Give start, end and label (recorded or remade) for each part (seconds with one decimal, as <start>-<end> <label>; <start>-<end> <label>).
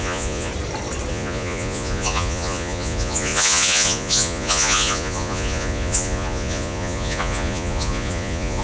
0.0-0.5 remade; 0.5-1.1 recorded; 1.1-8.6 remade